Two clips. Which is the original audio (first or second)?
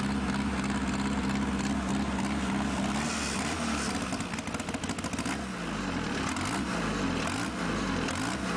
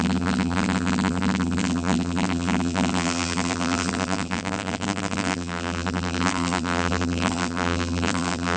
first